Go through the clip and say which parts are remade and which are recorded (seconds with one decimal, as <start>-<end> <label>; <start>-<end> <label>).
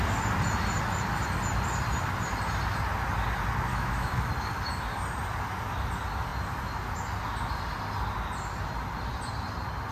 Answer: 0.0-3.7 recorded; 3.7-4.3 remade; 4.3-9.9 recorded